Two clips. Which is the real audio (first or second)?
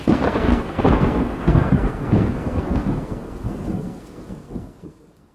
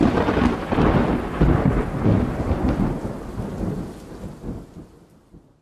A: second